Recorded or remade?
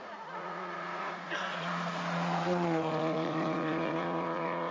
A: remade